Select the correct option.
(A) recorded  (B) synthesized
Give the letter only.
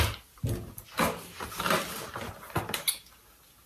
A